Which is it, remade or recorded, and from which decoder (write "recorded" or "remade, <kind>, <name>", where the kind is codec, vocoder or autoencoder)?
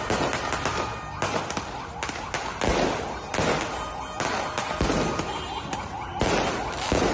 recorded